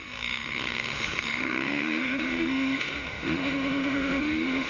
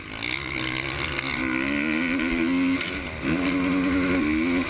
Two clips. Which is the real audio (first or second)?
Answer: second